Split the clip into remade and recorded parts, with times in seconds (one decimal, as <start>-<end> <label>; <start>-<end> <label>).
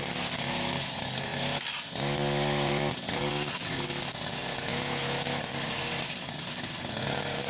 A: 0.0-4.7 recorded; 4.7-5.4 remade; 5.4-7.5 recorded